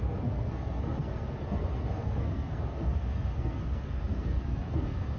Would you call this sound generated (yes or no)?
yes